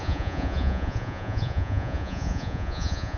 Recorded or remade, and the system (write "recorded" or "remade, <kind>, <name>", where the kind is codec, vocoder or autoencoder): remade, vocoder, Vocos